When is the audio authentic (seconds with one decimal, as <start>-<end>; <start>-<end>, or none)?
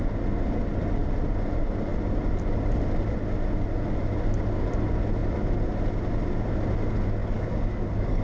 0.0-7.2